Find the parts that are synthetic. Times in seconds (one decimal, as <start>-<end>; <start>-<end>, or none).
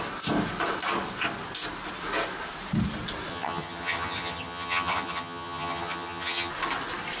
3.3-6.5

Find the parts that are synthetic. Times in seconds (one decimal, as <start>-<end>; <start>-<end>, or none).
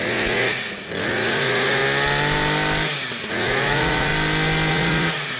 0.0-1.8; 3.3-4.1; 4.7-5.4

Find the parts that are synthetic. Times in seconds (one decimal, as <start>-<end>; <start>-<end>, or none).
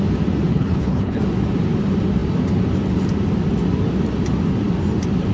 0.5-1.2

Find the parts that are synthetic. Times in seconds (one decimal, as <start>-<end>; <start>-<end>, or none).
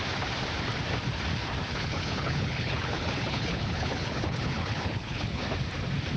1.7-5.4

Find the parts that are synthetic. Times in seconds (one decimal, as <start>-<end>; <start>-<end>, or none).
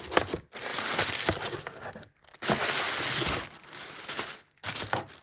0.7-1.2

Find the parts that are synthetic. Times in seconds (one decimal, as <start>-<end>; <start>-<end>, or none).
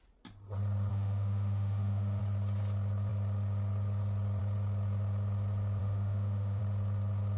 0.9-2.2; 5.8-6.6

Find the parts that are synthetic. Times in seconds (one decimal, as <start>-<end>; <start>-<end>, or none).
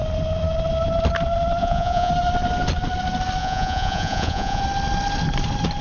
1.6-2.1; 3.4-4.6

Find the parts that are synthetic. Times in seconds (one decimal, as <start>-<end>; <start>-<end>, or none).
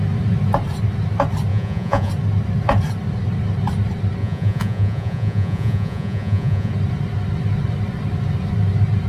1.5-2.1; 4.2-6.7